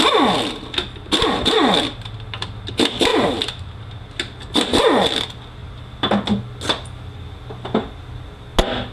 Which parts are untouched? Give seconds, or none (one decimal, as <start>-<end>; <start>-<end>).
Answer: 0.0-3.1; 4.2-8.9